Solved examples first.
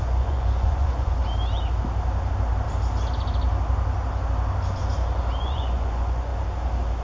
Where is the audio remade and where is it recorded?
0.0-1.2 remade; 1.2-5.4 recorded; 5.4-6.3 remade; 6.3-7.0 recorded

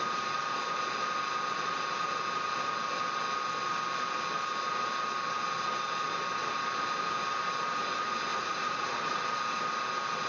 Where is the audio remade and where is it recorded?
0.0-8.3 recorded; 8.3-9.2 remade; 9.2-10.3 recorded